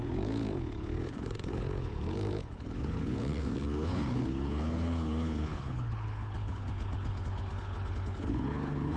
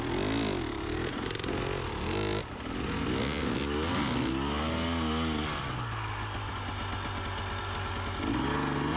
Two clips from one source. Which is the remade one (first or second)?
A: first